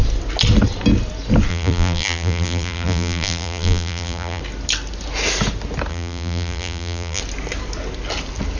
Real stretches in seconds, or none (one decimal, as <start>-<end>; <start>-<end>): 0.0-1.5; 4.4-5.9; 7.2-8.6